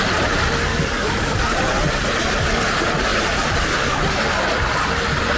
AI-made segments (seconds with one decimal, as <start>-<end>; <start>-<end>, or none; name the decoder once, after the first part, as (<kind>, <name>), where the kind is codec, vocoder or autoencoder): 0.7-1.4 (codec, DAC)